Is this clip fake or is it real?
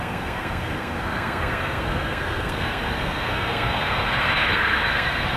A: fake